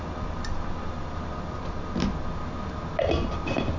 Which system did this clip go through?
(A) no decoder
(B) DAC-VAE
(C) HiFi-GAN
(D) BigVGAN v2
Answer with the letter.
A